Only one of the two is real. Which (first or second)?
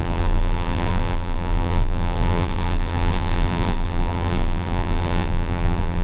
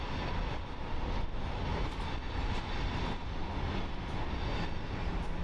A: second